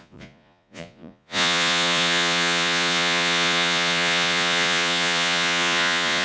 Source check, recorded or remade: remade